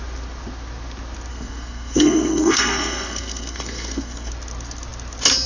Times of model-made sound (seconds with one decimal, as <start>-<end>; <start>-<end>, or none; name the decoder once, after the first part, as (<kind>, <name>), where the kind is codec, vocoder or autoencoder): 1.3-4.3 (codec, SNAC)